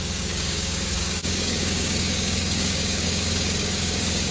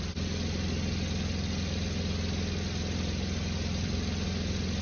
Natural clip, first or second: second